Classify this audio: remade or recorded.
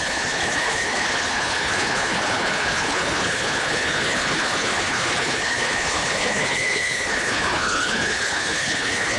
remade